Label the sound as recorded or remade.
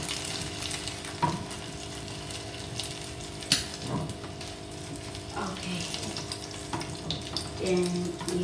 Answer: recorded